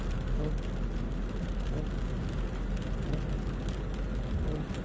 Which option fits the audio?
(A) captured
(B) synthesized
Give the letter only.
A